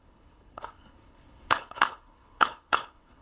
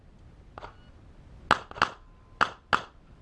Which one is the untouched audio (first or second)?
second